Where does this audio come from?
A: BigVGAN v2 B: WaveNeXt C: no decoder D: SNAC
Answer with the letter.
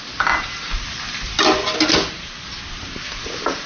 C